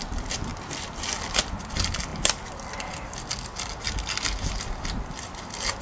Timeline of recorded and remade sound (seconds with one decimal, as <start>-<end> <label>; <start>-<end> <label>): 0.0-5.8 recorded